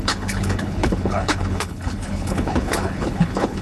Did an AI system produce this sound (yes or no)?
yes